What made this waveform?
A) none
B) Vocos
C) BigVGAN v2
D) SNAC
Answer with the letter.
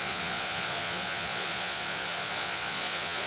B